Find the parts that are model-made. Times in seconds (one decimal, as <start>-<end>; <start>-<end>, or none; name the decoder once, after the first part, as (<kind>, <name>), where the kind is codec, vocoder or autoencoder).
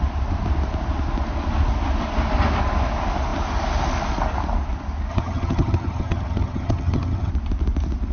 5.1-7.3 (vocoder, HiFi-GAN)